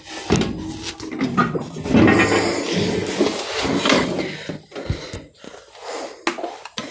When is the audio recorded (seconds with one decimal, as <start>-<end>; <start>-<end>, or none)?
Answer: 0.0-6.9